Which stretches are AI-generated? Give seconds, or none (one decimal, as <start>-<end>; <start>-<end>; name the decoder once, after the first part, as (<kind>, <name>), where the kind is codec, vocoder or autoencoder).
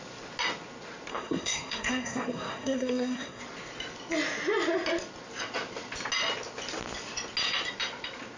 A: 1.1-3.4 (codec, SNAC)